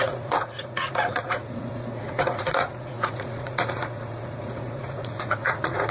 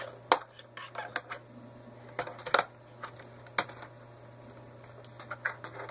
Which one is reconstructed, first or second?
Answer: first